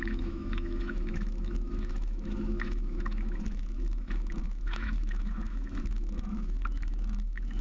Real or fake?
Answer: fake